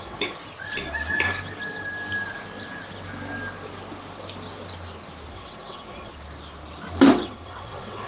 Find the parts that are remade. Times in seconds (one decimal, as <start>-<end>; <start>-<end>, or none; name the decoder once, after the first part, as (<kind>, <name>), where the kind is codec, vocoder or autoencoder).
0.0-0.4 (vocoder, WaveNeXt); 5.3-6.1; 7.1-8.1